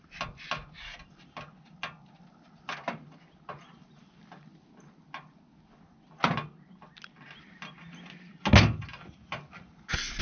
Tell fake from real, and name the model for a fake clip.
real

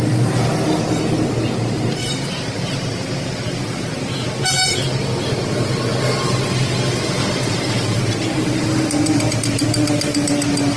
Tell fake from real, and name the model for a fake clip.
real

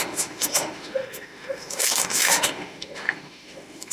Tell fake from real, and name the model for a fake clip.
fake, autoencoder, DAC-VAE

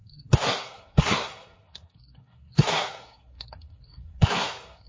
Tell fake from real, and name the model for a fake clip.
fake, codec, SNAC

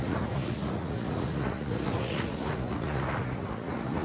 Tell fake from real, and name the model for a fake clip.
fake, vocoder, Vocos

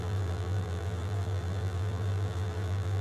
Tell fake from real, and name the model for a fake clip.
fake, vocoder, BigVGAN v2